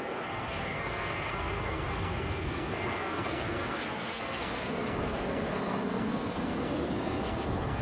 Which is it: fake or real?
fake